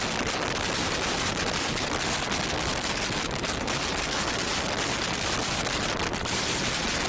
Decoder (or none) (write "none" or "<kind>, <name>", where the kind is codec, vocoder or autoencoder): none